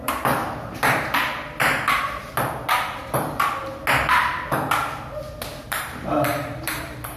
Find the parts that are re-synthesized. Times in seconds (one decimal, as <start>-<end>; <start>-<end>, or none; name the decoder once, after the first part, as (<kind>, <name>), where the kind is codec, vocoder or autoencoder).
0.0-1.3 (vocoder, BigVGAN v2); 5.6-7.2

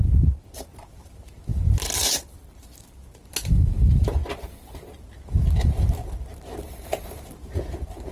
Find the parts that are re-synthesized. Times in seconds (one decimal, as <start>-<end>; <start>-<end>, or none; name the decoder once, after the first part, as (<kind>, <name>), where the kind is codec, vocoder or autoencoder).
0.0-4.2 (vocoder, BigVGAN v2); 5.0-8.1